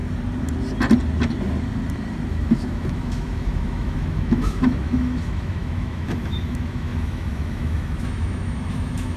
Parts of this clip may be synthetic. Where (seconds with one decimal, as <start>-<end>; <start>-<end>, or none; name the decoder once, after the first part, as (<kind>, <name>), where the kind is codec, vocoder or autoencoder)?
2.3-9.2 (autoencoder, DAC-VAE)